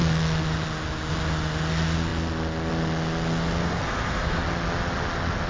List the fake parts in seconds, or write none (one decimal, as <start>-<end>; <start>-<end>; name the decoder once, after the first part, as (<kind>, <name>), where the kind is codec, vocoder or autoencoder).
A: 3.6-4.4 (codec, SNAC)